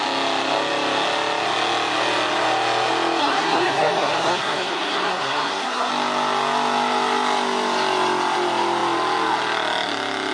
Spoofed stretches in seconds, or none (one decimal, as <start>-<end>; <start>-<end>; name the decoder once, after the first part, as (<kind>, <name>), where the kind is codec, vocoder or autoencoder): 3.2-5.9 (codec, SNAC)